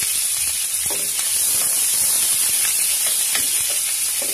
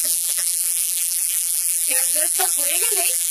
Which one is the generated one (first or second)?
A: second